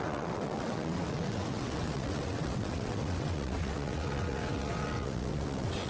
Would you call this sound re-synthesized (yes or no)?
yes